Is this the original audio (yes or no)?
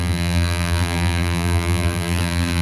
no